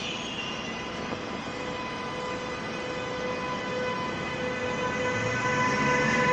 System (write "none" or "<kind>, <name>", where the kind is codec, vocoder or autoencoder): none